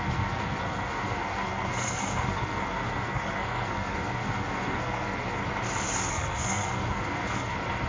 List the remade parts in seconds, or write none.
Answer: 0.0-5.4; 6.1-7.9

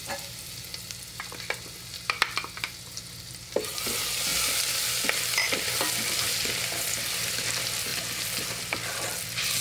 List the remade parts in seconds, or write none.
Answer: none

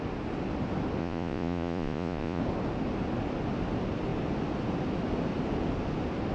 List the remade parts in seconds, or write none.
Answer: 1.0-2.4

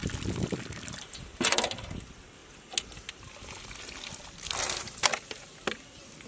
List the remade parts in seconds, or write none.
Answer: 0.9-2.4; 4.6-6.3

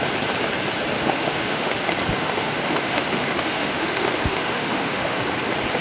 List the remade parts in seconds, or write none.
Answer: 0.9-1.7; 2.1-5.2

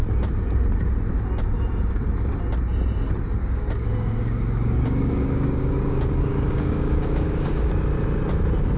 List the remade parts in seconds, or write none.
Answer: 3.4-7.7

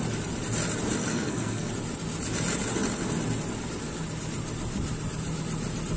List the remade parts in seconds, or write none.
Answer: 1.1-1.7

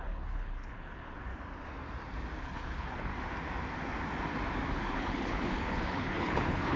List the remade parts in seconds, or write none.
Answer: 0.0-1.3; 2.4-3.1; 4.7-6.8